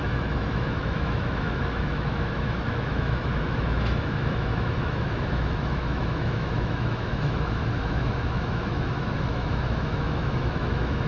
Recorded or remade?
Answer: remade